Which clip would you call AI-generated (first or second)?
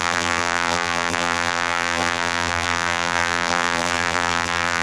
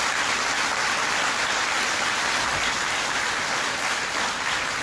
first